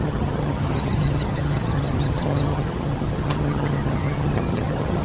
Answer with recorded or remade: remade